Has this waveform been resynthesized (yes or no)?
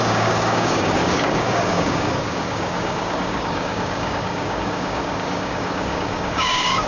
yes